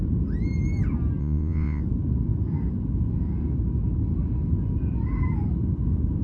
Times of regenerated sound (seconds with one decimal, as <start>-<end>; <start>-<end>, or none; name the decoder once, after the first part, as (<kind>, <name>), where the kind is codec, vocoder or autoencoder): 1.2-1.8 (vocoder, Vocos)